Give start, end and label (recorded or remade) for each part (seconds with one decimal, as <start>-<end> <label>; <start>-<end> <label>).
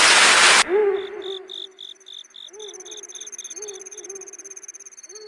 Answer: 0.0-5.3 recorded